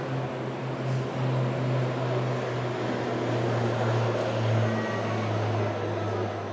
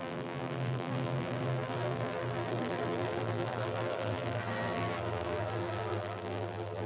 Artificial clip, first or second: second